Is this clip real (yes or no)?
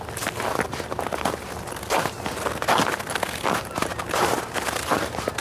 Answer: yes